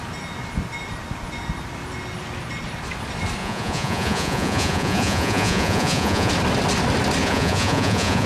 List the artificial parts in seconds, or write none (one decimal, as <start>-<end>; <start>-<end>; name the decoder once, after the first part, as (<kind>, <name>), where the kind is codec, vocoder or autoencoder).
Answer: 3.4-6.3 (vocoder, Vocos); 7.2-8.3

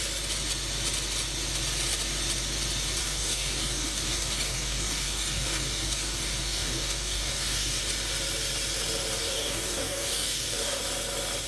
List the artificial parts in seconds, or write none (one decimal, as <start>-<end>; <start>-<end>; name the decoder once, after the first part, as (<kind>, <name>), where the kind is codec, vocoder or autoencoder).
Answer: 3.0-7.8 (codec, DAC); 9.2-10.8

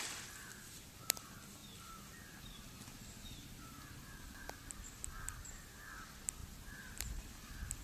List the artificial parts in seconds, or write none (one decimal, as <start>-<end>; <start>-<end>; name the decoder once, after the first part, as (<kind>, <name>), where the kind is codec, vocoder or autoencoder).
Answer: none